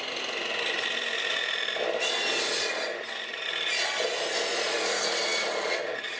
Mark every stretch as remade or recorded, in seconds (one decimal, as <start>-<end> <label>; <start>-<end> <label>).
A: 0.0-6.2 recorded